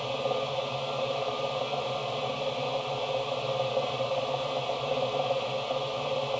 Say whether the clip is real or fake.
real